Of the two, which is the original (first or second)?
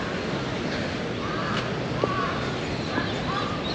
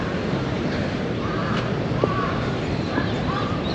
first